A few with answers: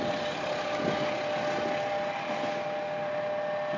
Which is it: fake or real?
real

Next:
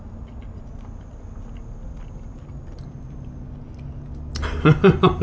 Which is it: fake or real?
real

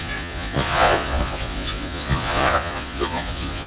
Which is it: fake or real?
fake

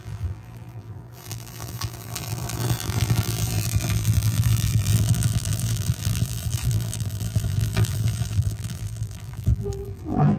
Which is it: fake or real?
fake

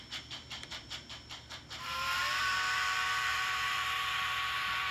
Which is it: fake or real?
fake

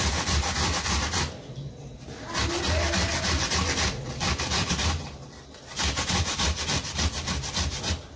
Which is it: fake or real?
real